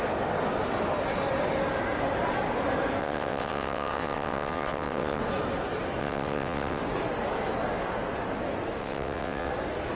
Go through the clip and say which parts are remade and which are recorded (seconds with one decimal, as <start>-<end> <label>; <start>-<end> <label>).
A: 0.0-3.0 recorded; 3.0-5.2 remade; 5.2-6.0 recorded; 6.0-6.8 remade; 6.8-8.8 recorded; 8.8-9.5 remade; 9.5-10.0 recorded